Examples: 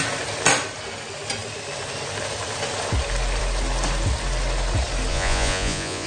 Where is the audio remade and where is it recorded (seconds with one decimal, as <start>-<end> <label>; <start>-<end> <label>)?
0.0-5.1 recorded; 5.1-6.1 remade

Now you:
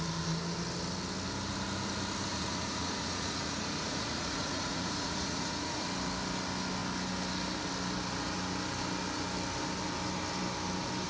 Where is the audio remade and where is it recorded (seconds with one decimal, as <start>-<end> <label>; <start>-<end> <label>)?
0.0-2.3 recorded; 2.3-5.8 remade; 5.8-11.1 recorded

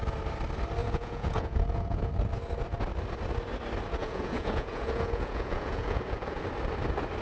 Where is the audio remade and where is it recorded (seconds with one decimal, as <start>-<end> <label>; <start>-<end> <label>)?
0.0-0.8 recorded; 0.8-2.1 remade; 2.1-4.0 recorded; 4.0-6.4 remade; 6.4-7.2 recorded